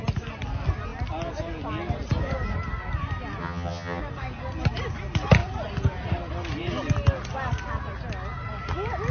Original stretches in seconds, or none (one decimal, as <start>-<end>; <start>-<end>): 0.0-3.4; 4.0-9.1